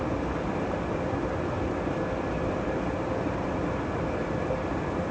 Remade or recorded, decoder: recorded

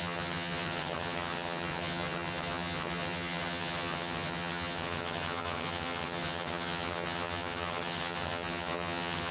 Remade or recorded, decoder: remade, vocoder, HiFi-GAN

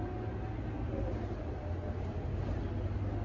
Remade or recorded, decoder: recorded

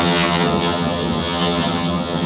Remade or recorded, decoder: remade, vocoder, HiFi-GAN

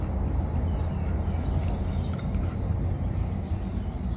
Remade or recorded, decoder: recorded